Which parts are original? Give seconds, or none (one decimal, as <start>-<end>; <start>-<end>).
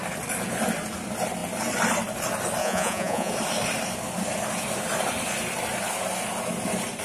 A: 0.0-2.6; 3.3-7.0